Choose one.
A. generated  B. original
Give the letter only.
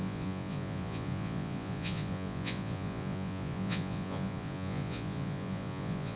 A